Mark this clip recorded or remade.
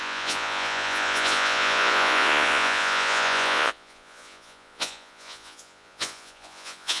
remade